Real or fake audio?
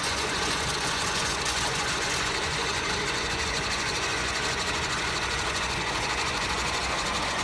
fake